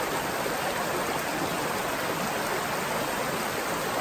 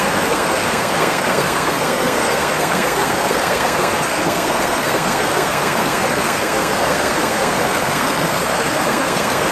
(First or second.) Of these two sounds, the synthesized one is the second